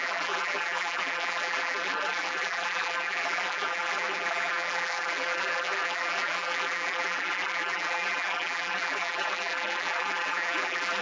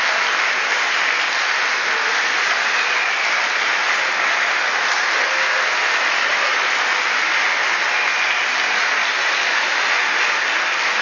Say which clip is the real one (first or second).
second